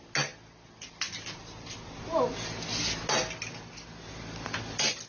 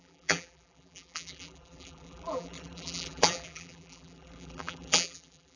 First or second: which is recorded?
first